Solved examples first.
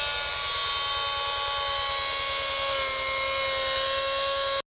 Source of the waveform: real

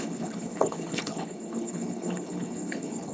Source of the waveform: fake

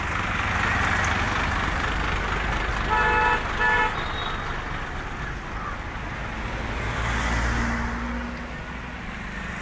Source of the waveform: real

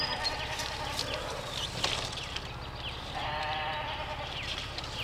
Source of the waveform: real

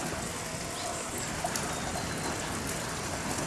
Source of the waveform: real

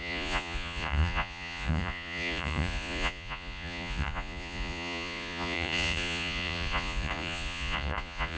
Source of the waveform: fake